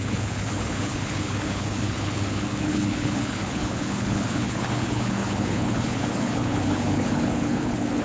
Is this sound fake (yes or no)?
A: yes